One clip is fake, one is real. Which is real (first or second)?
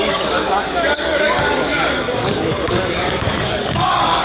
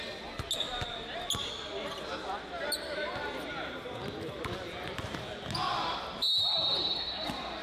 second